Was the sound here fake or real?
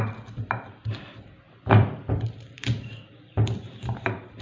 fake